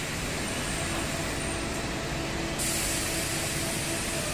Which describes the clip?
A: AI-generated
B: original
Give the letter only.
B